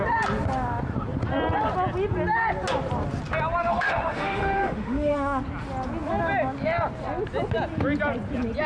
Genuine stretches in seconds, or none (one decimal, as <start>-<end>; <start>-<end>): 0.0-3.6; 5.4-8.7